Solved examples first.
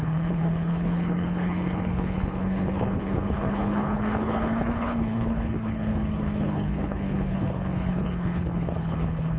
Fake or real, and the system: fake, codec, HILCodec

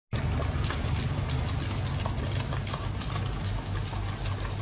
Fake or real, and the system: real